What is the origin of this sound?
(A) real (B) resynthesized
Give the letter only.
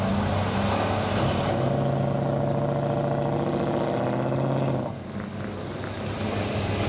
A